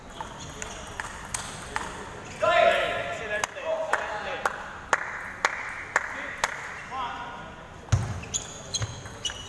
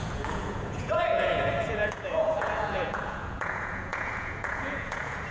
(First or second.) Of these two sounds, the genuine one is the first